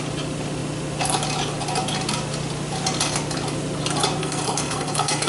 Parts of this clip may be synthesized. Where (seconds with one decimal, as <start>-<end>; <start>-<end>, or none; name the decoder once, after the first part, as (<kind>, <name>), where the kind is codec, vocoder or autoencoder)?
4.2-5.3 (codec, SNAC)